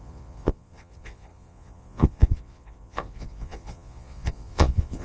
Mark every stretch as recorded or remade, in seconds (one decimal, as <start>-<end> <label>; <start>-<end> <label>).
0.0-5.0 remade